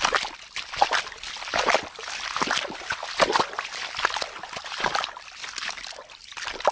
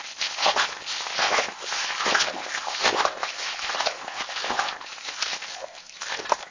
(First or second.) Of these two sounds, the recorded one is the first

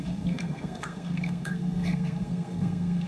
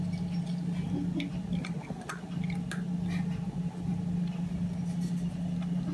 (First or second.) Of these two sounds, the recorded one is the second